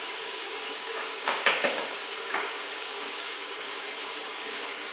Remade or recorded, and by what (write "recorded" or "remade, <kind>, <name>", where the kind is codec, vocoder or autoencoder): remade, codec, DAC